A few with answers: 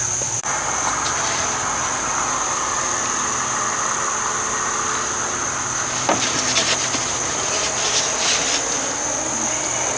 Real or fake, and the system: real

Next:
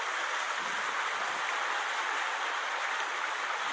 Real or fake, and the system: real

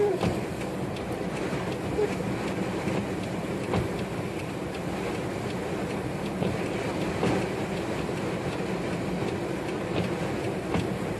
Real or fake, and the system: real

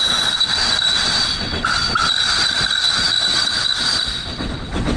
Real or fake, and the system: real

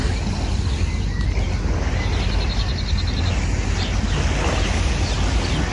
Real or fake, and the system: real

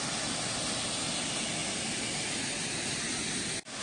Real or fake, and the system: real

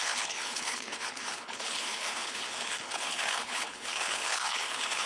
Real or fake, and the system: fake, codec, HILCodec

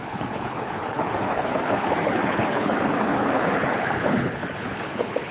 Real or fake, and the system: fake, codec, HILCodec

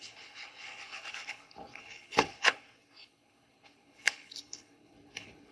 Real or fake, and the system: fake, codec, HILCodec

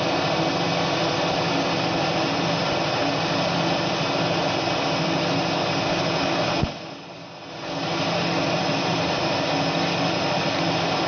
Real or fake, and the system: real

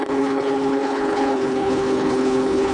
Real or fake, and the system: fake, codec, HILCodec